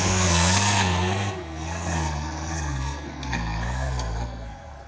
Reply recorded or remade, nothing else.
remade